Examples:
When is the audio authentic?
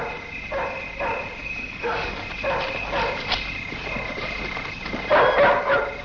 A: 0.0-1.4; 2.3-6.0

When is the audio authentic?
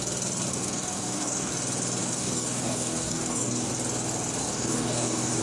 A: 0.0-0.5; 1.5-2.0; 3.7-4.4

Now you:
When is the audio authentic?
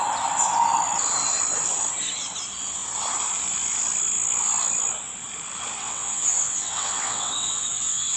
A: 0.0-5.8